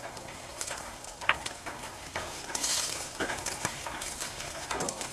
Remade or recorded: remade